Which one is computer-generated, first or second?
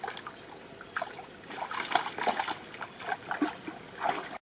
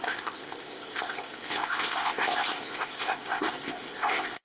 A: second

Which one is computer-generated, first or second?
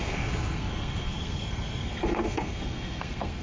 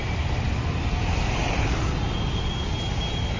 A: first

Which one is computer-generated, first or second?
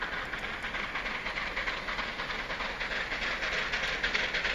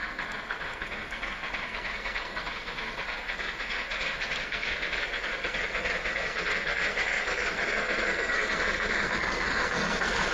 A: second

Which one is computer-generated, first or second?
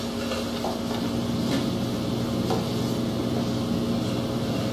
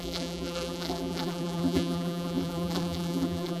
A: second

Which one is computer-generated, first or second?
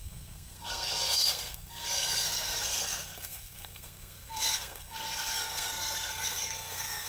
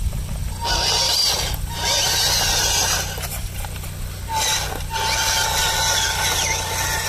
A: first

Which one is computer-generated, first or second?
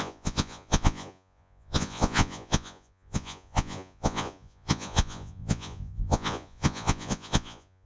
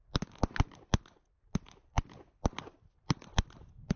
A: first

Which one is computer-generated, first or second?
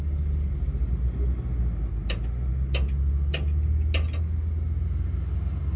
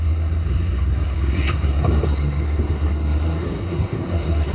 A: second